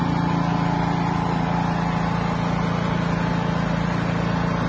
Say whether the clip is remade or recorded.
recorded